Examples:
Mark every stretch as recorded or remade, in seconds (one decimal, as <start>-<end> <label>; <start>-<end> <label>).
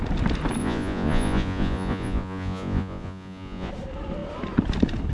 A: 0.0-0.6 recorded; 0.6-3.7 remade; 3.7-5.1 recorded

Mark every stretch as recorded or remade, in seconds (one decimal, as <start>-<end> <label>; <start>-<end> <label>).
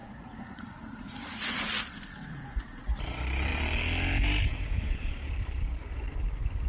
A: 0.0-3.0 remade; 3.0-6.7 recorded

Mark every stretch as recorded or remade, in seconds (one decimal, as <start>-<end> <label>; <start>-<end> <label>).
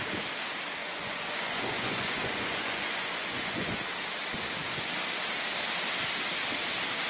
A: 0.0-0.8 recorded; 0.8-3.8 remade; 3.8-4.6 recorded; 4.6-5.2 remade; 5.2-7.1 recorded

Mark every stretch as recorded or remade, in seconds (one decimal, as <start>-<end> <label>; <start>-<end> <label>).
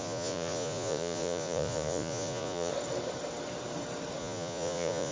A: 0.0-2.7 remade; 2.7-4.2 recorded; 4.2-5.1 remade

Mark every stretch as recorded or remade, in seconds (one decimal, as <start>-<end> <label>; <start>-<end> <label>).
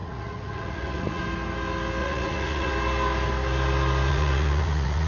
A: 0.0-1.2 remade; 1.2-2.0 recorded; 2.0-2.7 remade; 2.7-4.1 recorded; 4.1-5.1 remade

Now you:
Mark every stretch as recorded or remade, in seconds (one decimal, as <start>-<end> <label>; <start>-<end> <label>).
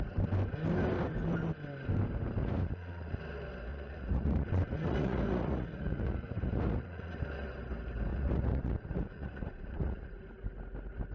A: 0.0-2.4 recorded; 2.4-3.2 remade; 3.2-3.7 recorded; 3.7-7.1 remade; 7.1-8.1 recorded; 8.1-10.2 remade; 10.2-11.1 recorded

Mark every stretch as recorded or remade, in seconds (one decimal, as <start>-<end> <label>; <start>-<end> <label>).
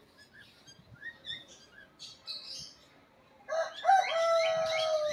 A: 0.0-1.0 recorded; 1.0-1.6 remade; 1.6-5.1 recorded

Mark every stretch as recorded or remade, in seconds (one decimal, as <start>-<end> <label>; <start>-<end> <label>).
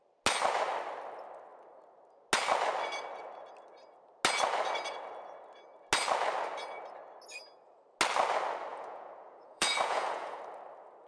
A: 0.0-8.7 recorded; 8.7-10.4 remade; 10.4-11.1 recorded